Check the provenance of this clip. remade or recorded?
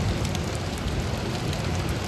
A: recorded